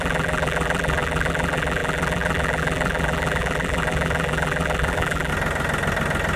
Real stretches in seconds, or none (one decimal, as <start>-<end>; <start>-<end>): 5.3-6.4